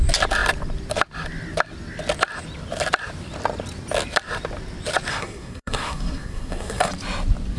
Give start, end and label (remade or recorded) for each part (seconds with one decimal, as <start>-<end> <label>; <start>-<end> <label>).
0.0-5.1 recorded; 5.1-6.9 remade; 6.9-7.6 recorded